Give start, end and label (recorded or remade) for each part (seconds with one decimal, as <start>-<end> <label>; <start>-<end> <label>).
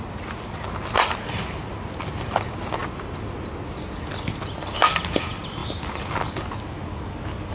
0.0-7.5 recorded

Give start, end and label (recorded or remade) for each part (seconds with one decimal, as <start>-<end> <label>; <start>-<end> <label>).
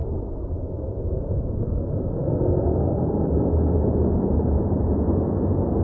0.0-5.8 recorded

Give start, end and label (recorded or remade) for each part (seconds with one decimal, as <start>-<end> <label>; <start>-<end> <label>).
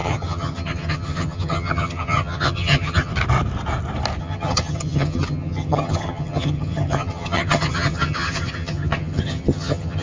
0.0-3.1 remade; 3.1-4.2 recorded; 4.2-10.0 remade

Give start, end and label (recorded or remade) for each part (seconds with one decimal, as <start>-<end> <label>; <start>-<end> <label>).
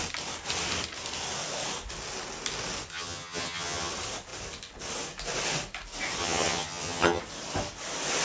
0.0-2.9 recorded; 2.9-3.9 remade; 3.9-6.2 recorded; 6.2-7.2 remade; 7.2-8.2 recorded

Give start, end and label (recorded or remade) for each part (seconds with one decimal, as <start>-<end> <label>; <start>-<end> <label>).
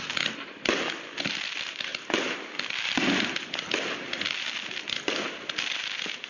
0.0-6.3 recorded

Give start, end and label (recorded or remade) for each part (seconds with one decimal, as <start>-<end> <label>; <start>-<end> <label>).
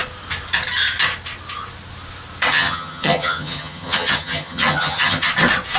0.0-2.5 recorded; 2.5-5.3 remade; 5.3-5.8 recorded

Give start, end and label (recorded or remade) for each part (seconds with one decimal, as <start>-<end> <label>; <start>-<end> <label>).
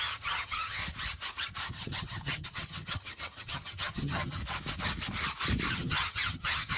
0.0-0.8 remade; 0.8-1.7 recorded; 1.7-4.4 remade; 4.4-5.7 recorded; 5.7-6.8 remade